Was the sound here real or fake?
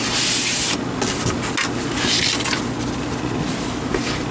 real